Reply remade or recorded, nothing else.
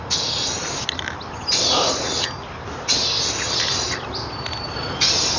recorded